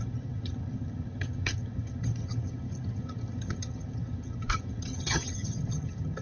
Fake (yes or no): yes